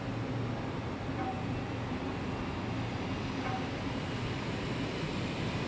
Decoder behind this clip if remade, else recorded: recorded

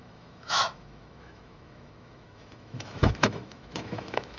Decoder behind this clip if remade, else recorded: remade, autoencoder, DAC-VAE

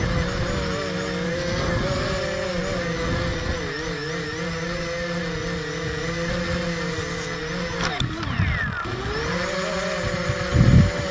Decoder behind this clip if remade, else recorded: recorded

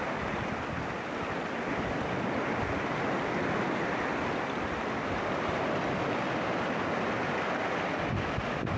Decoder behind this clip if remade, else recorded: recorded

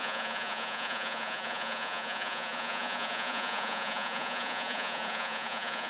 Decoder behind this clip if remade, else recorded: remade, vocoder, Vocos